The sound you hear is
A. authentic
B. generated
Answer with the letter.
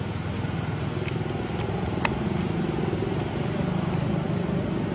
A